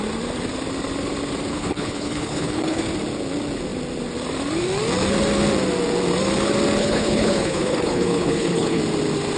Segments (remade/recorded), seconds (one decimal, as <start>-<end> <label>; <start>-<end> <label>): 0.0-1.5 recorded; 1.5-2.8 remade; 2.8-6.8 recorded; 6.8-8.8 remade; 8.8-9.4 recorded